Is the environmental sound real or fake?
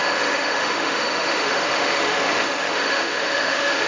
fake